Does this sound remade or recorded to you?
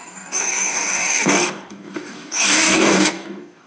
remade